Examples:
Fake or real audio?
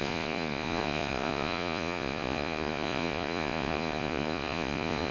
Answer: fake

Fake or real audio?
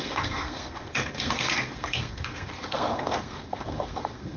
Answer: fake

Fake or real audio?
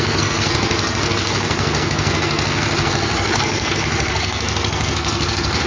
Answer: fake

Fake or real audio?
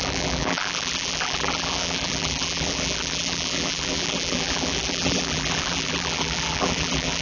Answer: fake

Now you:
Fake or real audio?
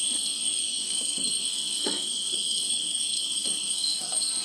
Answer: fake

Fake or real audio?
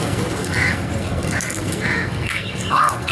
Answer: fake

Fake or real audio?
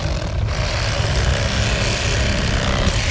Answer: real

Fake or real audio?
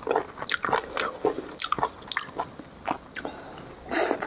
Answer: real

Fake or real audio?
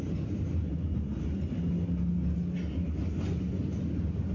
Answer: real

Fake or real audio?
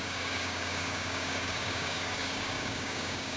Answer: fake